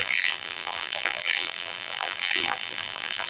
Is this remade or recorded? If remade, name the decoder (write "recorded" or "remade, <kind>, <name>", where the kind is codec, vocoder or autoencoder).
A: remade, vocoder, BigVGAN v2